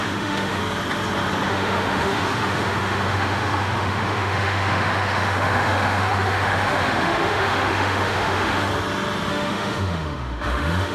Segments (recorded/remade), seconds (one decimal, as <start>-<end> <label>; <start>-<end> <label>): 0.0-0.6 remade; 0.6-1.5 recorded; 1.5-8.7 remade; 8.7-9.3 recorded; 9.3-10.9 remade